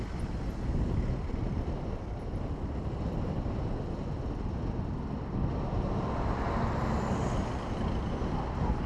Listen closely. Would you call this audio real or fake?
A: real